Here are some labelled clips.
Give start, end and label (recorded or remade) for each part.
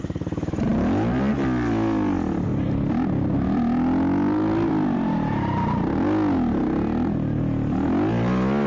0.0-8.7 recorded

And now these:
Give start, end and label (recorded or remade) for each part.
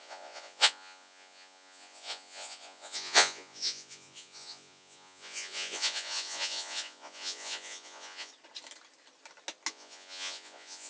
0.0-8.3 remade; 8.3-9.7 recorded; 9.7-10.9 remade